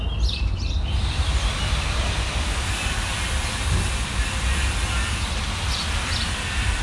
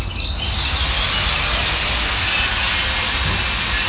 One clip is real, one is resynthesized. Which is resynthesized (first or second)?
first